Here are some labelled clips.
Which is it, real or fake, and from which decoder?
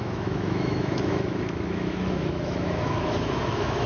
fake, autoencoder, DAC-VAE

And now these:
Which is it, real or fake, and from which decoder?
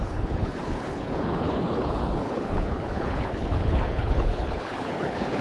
fake, codec, HILCodec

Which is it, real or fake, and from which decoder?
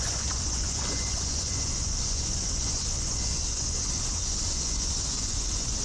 fake, vocoder, Vocos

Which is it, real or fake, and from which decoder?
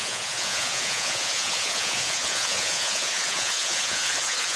fake, vocoder, Vocos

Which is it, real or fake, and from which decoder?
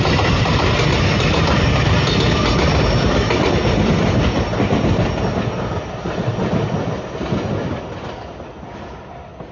real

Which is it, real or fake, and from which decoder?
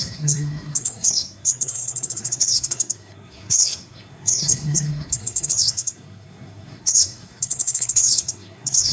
fake, codec, SNAC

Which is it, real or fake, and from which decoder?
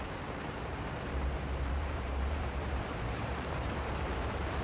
fake, vocoder, BigVGAN v2